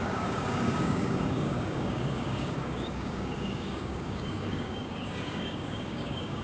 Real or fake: fake